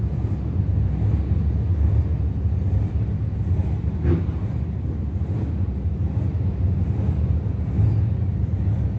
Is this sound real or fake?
real